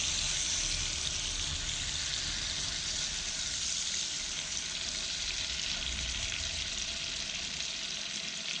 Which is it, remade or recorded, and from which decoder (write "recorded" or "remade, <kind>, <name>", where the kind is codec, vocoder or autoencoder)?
recorded